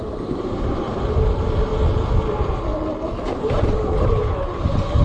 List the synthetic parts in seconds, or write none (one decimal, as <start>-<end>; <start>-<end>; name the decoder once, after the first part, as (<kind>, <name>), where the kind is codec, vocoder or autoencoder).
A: 0.0-1.7 (vocoder, BigVGAN v2); 2.3-2.7; 3.4-5.0